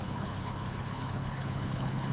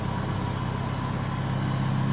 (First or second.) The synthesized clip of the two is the first